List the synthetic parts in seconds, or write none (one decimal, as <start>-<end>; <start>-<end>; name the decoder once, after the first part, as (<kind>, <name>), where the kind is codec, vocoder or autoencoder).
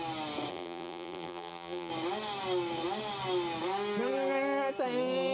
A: 0.5-1.9 (vocoder, BigVGAN v2)